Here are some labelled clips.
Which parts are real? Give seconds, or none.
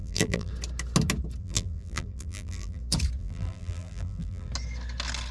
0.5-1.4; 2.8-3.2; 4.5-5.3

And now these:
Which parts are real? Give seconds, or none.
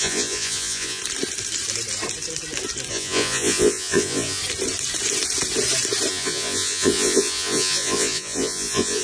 1.0-2.9; 4.4-6.1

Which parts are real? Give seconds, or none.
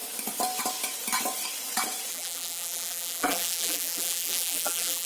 0.0-2.1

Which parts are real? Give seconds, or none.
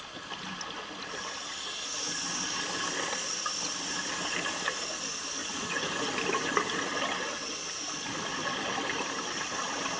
0.0-5.4; 6.1-10.0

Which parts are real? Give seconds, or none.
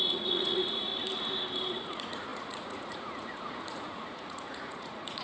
0.9-1.7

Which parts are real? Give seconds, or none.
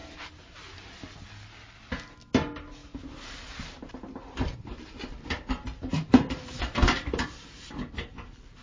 1.0-2.8; 7.7-8.6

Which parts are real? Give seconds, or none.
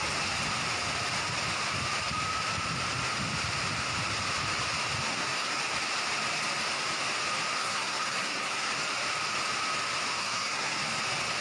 0.0-5.1; 5.6-7.6; 8.7-10.2; 10.8-11.4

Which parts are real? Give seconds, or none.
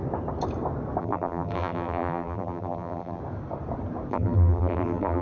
0.0-1.0; 3.2-4.1